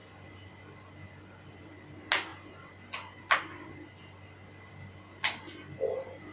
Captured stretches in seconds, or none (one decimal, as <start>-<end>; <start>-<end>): 0.0-6.3